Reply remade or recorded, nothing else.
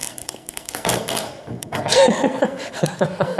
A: remade